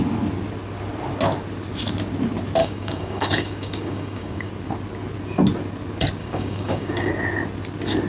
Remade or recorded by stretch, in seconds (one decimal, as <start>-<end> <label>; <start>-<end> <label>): 0.0-2.6 recorded; 2.6-4.5 remade; 4.5-6.2 recorded; 6.2-7.1 remade; 7.1-8.1 recorded